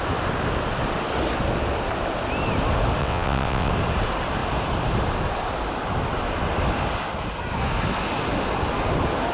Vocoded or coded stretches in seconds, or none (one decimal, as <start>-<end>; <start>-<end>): 3.0-3.7